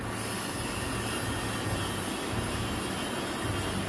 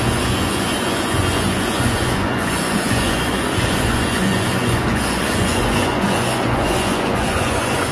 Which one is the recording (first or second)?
first